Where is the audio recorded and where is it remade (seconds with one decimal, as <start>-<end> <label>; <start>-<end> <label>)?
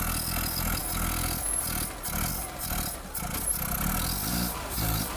0.0-4.3 recorded; 4.3-5.2 remade